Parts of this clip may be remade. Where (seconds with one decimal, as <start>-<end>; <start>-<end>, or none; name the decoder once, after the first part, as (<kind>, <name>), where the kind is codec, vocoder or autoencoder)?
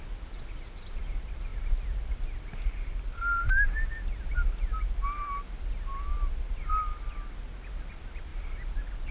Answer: none